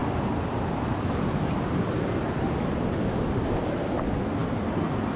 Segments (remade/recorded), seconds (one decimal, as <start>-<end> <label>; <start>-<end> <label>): 0.0-5.2 recorded

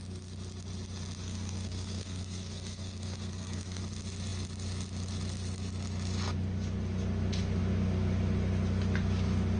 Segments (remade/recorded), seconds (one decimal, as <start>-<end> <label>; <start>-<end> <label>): 0.0-1.2 recorded; 1.2-3.8 remade; 3.8-9.6 recorded

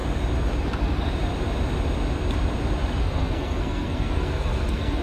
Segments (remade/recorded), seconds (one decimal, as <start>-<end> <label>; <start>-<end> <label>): 0.0-3.0 recorded; 3.0-5.0 remade